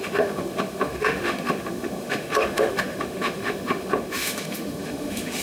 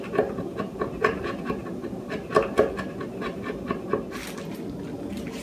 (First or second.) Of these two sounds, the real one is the second